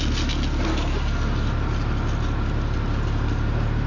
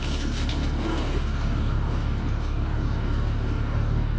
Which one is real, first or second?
first